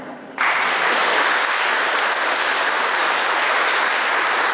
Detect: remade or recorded recorded